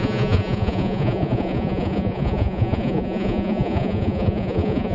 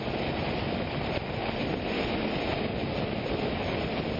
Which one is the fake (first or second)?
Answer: first